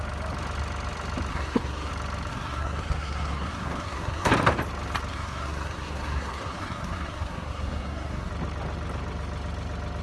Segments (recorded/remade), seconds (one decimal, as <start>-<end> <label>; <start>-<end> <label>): 0.0-1.3 recorded; 1.3-1.9 remade; 1.9-2.3 recorded; 2.3-4.3 remade; 4.3-5.1 recorded; 5.1-8.3 remade; 8.3-10.0 recorded